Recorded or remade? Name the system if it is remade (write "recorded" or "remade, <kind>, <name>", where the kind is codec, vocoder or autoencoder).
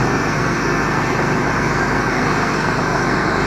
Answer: remade, codec, SNAC